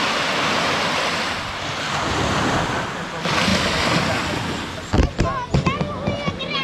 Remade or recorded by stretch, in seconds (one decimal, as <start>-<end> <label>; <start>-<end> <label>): 0.0-6.6 recorded